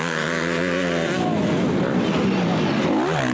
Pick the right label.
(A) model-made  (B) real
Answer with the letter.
B